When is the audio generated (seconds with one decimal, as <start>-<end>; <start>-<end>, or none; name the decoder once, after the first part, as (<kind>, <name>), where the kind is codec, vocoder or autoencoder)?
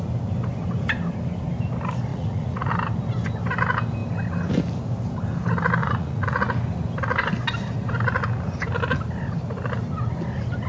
2.1-2.7 (vocoder, Vocos); 5.8-6.4